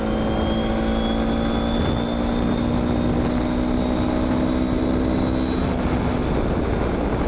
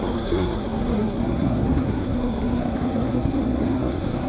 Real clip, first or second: first